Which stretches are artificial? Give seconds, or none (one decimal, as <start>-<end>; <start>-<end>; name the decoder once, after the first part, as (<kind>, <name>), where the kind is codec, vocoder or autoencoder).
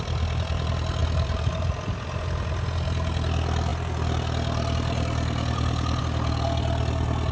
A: none